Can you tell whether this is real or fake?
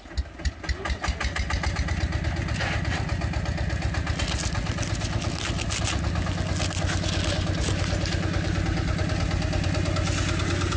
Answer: real